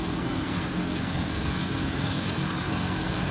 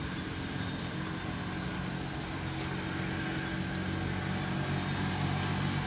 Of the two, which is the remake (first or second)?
first